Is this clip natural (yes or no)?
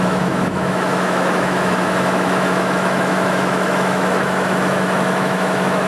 no